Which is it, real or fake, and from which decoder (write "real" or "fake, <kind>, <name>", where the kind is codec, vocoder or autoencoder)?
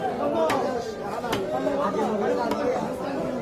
real